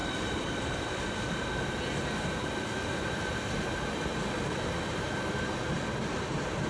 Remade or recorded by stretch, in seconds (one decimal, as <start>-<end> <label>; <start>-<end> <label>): 0.0-0.6 remade; 0.6-6.7 recorded